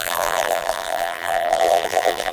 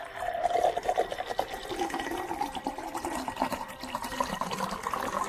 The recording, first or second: second